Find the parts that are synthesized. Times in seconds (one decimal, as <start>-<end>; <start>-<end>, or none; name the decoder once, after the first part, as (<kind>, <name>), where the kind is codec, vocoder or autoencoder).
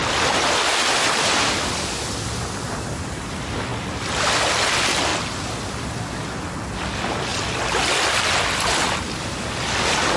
none